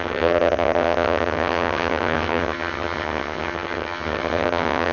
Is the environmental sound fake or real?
fake